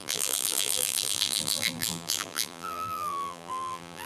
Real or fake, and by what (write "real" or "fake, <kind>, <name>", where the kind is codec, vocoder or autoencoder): fake, vocoder, BigVGAN v2